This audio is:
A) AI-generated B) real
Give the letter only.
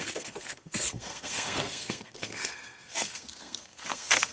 A